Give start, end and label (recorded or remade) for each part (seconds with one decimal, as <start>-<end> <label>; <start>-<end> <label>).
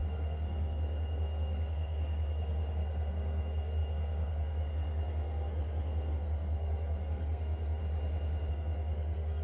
0.0-7.8 remade; 7.8-8.5 recorded; 8.5-9.4 remade